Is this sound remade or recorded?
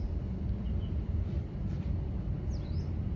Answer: recorded